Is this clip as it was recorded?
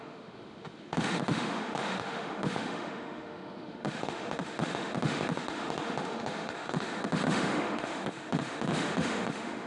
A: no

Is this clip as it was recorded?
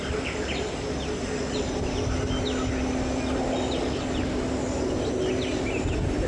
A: yes